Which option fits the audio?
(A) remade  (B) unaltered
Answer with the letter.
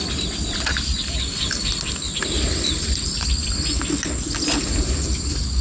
B